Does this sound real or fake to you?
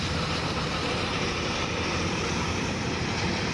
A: fake